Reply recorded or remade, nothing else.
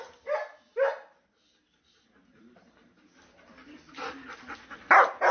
recorded